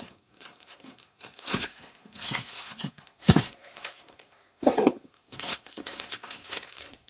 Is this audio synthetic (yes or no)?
yes